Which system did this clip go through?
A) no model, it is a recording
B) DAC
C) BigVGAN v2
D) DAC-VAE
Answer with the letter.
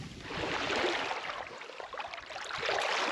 A